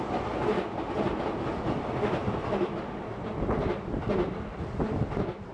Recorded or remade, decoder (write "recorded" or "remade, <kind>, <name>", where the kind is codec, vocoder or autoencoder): recorded